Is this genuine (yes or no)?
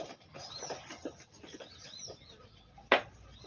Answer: yes